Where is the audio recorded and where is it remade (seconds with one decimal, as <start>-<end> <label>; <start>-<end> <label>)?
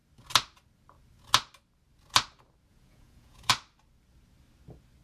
0.0-2.7 recorded; 2.7-3.5 remade; 3.5-5.0 recorded